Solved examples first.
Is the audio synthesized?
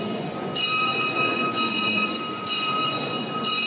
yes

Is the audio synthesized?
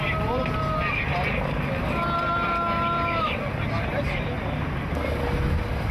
no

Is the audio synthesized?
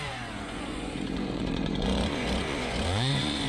yes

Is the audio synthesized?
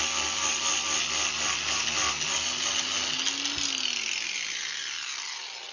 no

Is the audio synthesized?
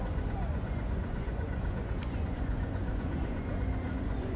yes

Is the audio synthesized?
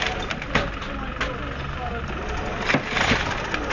no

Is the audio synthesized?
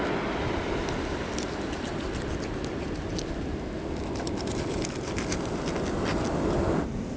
no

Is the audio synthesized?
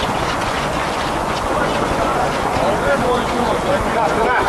yes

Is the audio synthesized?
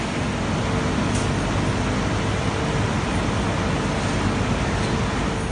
no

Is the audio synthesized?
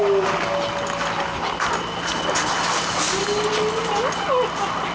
no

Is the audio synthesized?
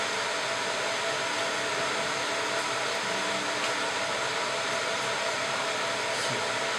no